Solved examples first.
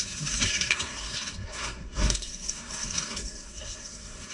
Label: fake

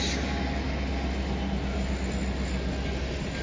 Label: real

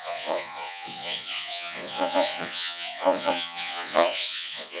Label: fake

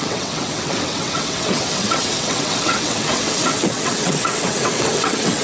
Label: fake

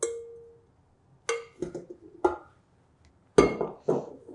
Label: real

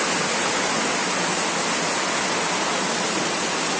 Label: real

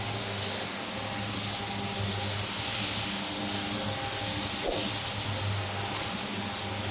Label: real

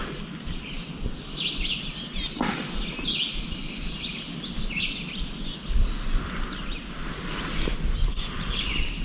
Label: real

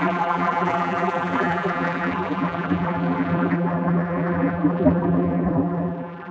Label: fake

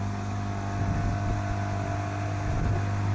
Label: real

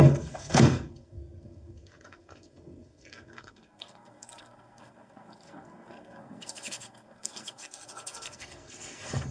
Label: fake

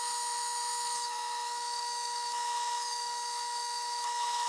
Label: fake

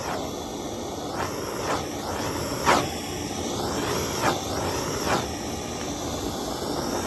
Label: real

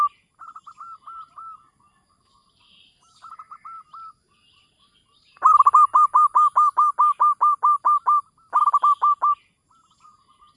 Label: real